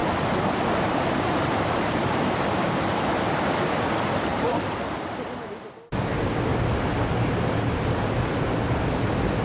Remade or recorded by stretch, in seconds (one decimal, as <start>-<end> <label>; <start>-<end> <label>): 0.0-3.0 remade; 3.0-4.3 recorded; 4.3-4.8 remade; 4.8-6.5 recorded; 6.5-7.1 remade; 7.1-9.4 recorded